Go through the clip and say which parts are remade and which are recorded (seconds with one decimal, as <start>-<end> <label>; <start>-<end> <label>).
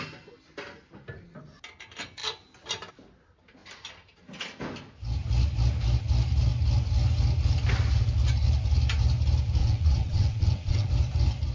0.0-9.6 recorded; 9.6-10.9 remade; 10.9-11.5 recorded